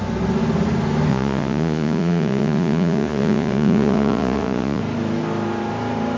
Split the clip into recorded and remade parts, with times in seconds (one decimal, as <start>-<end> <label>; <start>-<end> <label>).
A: 0.0-1.1 recorded; 1.1-4.8 remade; 4.8-6.2 recorded